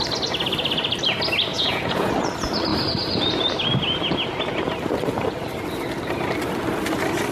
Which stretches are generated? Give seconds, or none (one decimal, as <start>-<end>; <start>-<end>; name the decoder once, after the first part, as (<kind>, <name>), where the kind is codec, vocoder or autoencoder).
1.5-2.1 (vocoder, Vocos)